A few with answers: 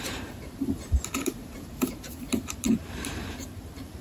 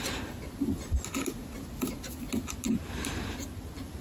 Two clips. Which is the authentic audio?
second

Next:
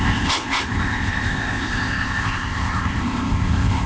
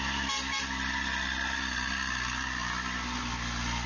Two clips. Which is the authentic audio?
second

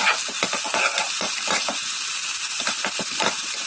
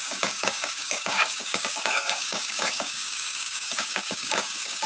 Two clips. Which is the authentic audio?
first